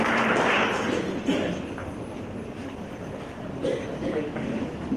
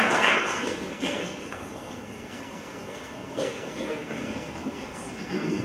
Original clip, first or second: first